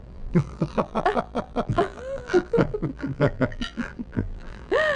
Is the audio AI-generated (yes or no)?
yes